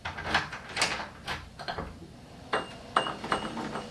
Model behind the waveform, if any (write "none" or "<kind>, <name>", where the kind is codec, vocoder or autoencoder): none